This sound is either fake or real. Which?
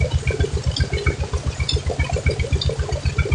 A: real